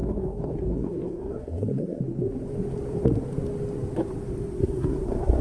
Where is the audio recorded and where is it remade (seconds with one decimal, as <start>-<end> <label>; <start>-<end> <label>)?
0.0-2.0 remade; 2.0-4.6 recorded; 4.6-5.4 remade